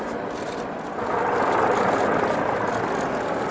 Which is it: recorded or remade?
recorded